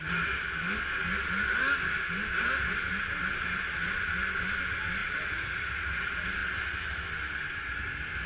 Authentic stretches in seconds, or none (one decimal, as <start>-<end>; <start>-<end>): 0.0-5.0; 5.6-8.3